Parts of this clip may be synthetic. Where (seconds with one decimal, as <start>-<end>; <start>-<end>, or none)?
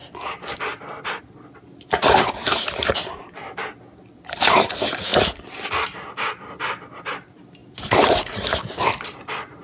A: none